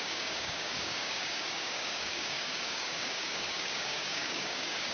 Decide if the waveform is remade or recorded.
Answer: remade